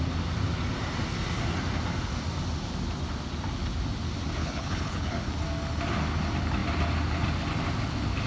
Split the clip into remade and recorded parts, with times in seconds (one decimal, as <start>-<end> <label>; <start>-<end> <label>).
0.0-4.4 recorded; 4.4-5.3 remade; 5.3-8.3 recorded